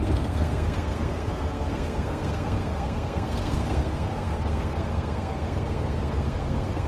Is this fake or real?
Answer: fake